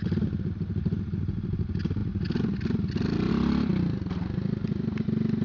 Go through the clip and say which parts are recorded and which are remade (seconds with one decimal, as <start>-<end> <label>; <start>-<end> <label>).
0.0-5.4 recorded